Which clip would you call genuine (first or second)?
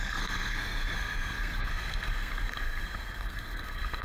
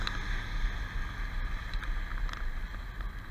second